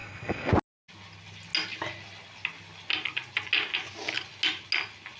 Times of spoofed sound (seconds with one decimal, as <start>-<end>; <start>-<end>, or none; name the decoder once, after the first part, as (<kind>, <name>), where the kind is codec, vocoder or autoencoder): 0.0-0.5 (codec, SNAC)